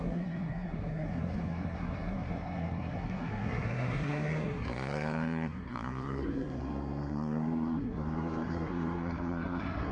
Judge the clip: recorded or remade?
remade